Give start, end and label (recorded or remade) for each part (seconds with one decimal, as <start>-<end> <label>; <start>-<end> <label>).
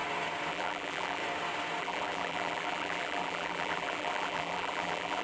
0.0-0.5 recorded; 0.5-1.2 remade; 1.2-1.8 recorded; 1.8-5.2 remade